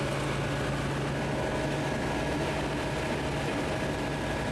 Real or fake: real